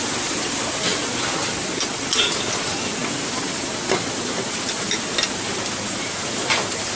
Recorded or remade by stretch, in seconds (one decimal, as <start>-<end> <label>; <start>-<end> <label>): 0.0-7.0 recorded